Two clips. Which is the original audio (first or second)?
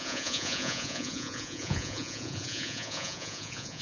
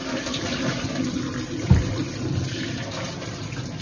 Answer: second